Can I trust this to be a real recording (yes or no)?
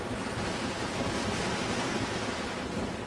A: yes